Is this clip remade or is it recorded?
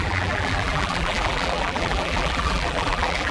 remade